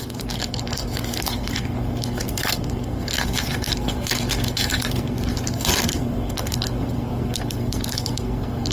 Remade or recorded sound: remade